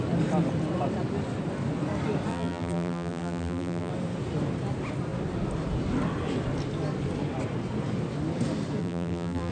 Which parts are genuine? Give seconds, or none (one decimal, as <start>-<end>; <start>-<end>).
0.0-2.3; 3.9-8.8